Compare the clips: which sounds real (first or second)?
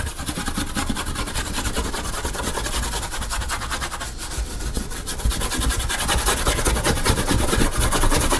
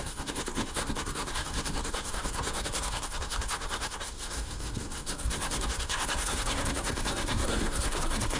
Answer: first